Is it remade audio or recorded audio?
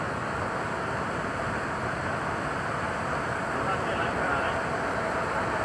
recorded